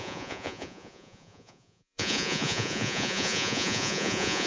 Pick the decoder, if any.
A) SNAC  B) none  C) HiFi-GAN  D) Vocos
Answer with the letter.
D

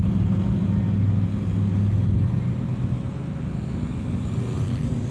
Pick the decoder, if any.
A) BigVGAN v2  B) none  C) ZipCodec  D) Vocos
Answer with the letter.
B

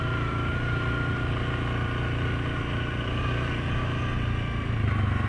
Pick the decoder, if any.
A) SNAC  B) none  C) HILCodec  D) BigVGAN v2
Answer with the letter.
B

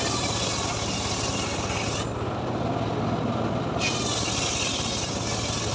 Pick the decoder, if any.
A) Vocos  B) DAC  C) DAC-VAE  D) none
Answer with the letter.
D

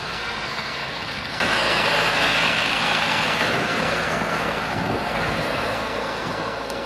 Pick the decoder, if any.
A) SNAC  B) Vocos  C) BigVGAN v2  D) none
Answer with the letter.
A